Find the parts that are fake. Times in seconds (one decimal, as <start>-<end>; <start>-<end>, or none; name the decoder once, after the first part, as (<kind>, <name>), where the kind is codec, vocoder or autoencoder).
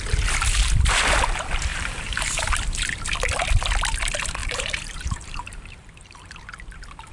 1.7-2.4 (vocoder, BigVGAN v2); 4.4-6.3